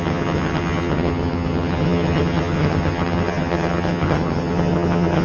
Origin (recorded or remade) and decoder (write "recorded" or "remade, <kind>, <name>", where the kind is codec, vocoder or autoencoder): remade, vocoder, HiFi-GAN